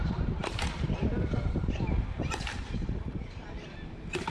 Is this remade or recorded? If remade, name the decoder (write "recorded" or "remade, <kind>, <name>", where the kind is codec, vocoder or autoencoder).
remade, vocoder, BigVGAN v2